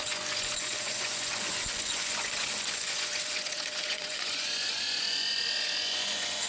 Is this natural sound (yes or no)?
no